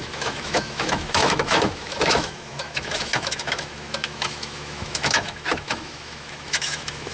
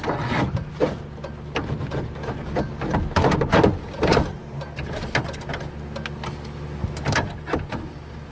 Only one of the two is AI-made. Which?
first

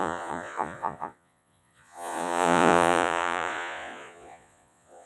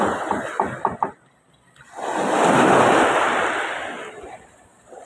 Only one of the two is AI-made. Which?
first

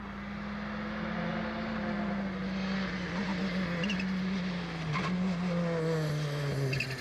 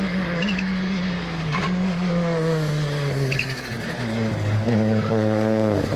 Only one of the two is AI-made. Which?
second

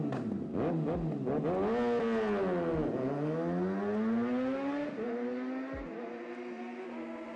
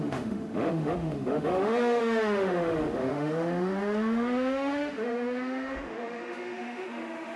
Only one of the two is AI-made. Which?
second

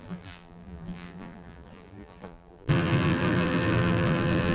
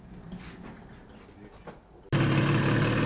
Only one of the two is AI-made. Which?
first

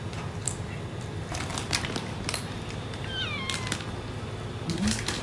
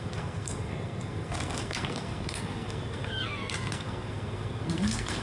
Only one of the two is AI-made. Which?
second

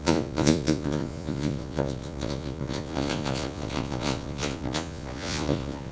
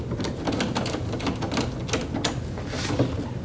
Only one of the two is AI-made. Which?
first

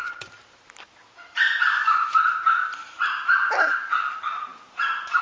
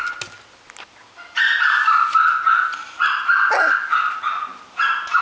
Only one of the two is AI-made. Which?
first